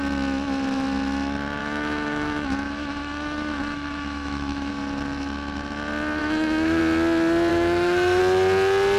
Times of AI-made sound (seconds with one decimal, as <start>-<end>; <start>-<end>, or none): 1.6-4.7; 6.2-6.8; 7.5-8.2